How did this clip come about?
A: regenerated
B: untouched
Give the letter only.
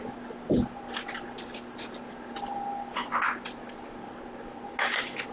B